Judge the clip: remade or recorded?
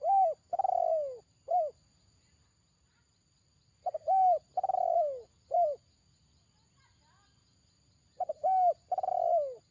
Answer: recorded